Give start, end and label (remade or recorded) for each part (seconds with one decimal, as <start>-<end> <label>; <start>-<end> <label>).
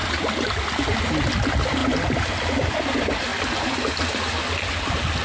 0.0-5.2 recorded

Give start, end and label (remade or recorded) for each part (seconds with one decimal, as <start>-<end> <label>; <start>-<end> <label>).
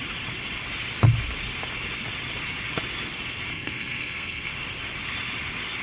0.0-3.5 recorded; 3.5-4.5 remade; 4.5-5.8 recorded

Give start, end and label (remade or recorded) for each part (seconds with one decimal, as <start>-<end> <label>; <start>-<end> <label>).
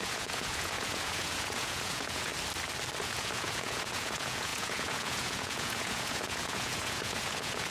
0.0-2.3 remade; 2.3-3.0 recorded; 3.0-7.7 remade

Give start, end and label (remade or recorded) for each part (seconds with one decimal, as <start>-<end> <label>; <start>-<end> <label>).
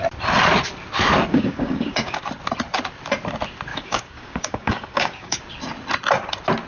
0.0-1.3 recorded; 1.3-2.2 remade; 2.2-3.7 recorded; 3.7-5.4 remade; 5.4-6.7 recorded